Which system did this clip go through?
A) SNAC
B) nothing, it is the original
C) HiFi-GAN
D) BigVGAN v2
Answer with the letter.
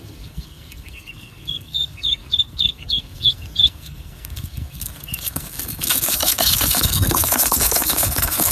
A